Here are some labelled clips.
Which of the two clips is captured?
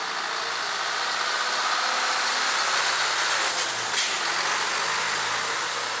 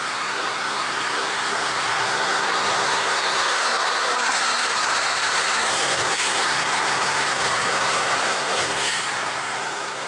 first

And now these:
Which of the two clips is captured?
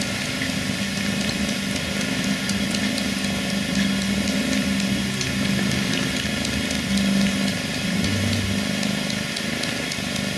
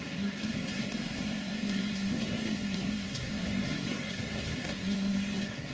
first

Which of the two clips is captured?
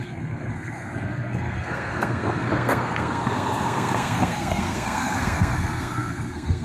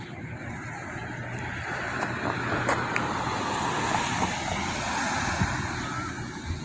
second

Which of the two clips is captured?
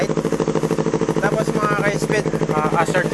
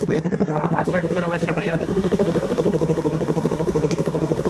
first